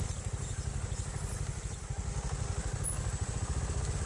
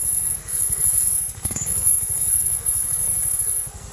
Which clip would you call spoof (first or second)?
second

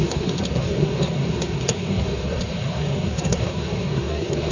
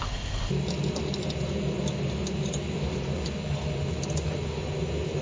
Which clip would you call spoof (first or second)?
first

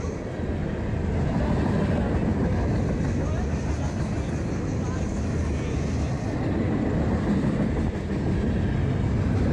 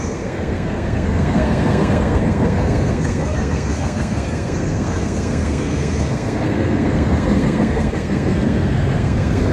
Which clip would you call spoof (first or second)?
second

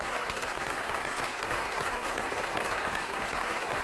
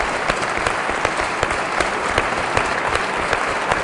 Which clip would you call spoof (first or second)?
first